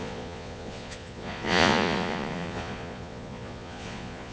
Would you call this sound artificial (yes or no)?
yes